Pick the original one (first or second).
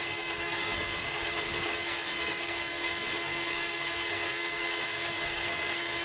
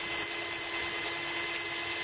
second